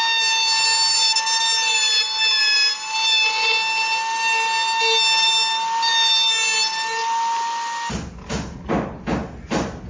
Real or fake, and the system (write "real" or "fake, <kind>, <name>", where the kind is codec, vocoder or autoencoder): real